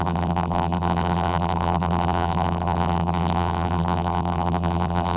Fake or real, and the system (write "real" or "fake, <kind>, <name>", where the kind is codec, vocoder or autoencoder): fake, vocoder, BigVGAN v2